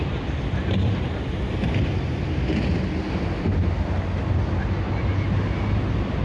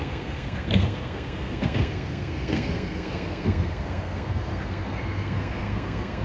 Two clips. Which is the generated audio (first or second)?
second